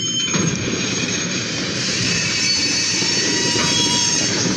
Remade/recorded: remade